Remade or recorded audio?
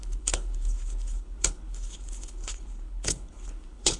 remade